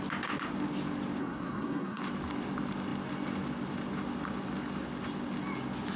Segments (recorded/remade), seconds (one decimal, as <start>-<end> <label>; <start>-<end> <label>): 0.0-1.2 recorded; 1.2-2.0 remade; 2.0-6.0 recorded